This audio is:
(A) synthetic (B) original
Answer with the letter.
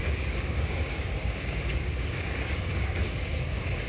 A